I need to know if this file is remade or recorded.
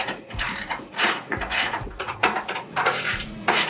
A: remade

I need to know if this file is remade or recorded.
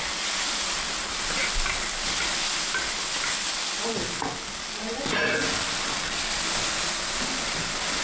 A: recorded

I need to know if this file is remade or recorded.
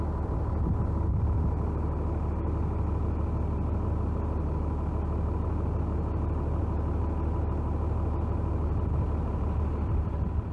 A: recorded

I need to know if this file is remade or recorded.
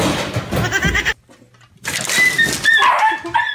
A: recorded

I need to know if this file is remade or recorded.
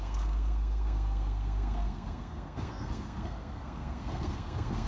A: remade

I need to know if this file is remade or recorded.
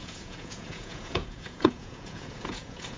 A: remade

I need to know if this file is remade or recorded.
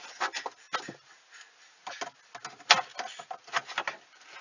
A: recorded